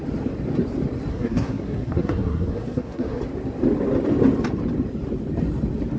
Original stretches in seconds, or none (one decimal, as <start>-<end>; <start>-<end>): 0.0-1.1; 3.2-6.0